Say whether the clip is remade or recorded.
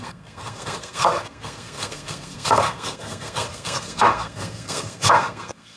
remade